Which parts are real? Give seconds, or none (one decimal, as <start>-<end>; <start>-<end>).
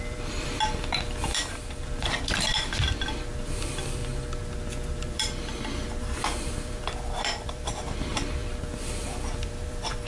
4.0-5.0